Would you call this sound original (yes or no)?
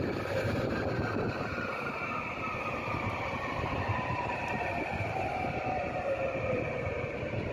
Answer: no